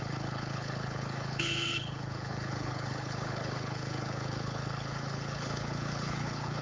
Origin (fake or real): fake